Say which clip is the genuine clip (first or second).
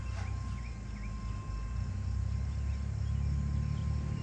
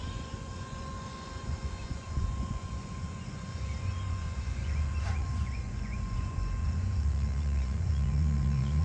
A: first